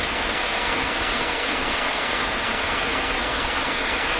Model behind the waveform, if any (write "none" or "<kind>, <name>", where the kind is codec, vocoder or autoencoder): codec, SNAC